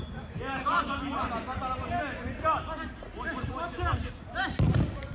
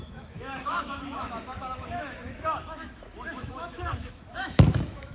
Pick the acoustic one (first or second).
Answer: first